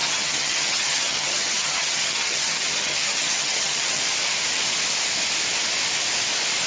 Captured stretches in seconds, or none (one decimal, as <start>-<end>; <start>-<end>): 4.0-6.7